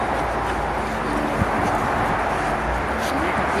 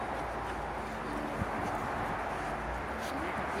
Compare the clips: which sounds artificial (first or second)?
first